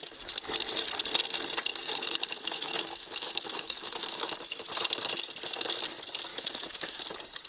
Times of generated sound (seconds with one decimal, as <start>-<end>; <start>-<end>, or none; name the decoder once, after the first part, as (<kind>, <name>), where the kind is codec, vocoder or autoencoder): 1.7-4.7 (autoencoder, DAC-VAE); 6.3-7.0